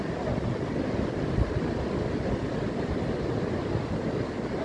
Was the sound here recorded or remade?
recorded